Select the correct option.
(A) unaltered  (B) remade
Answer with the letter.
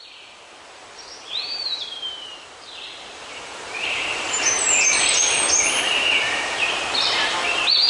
B